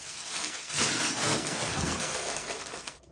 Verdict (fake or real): fake